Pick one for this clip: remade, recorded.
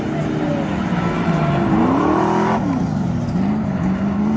recorded